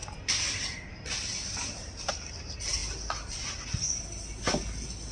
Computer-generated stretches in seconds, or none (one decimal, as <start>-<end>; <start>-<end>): none